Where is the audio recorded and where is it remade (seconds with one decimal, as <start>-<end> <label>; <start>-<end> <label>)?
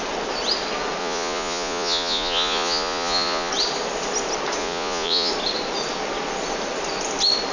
0.0-1.0 recorded; 1.0-3.5 remade; 3.5-4.6 recorded; 4.6-5.3 remade; 5.3-7.5 recorded